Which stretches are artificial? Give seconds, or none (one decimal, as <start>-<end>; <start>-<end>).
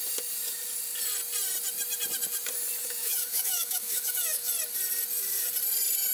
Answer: 2.8-4.5